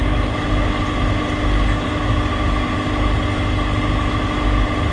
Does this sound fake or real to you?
real